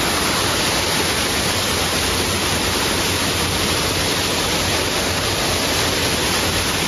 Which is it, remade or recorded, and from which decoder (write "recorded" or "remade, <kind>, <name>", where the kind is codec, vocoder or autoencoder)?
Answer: recorded